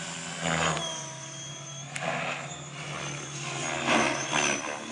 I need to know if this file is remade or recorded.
recorded